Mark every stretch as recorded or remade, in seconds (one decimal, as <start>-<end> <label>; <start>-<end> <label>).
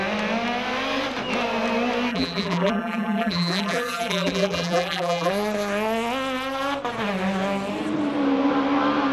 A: 0.0-2.1 recorded; 2.1-5.3 remade; 5.3-9.1 recorded